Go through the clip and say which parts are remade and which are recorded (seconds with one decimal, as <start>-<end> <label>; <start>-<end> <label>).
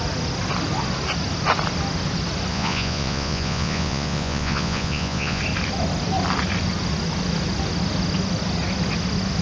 0.0-2.5 recorded; 2.5-5.4 remade; 5.4-9.4 recorded